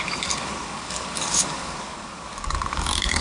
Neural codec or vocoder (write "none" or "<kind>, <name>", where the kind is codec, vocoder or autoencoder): codec, DAC